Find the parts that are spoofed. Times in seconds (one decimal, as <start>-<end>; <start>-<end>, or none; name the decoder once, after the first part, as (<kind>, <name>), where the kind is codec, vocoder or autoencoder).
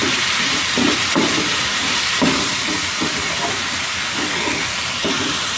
0.0-2.8 (vocoder, BigVGAN v2); 5.0-5.6